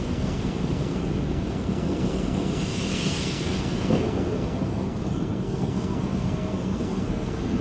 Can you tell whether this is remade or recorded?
remade